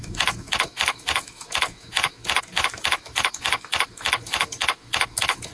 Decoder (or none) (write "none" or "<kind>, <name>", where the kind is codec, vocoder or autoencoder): autoencoder, DAC-VAE